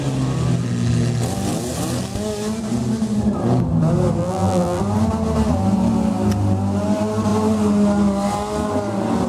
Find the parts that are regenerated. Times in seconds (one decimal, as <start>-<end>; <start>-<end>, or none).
4.2-4.8